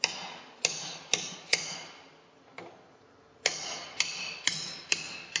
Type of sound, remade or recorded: recorded